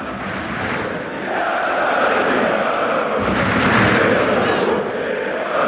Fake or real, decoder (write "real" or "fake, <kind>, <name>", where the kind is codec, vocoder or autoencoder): fake, vocoder, BigVGAN v2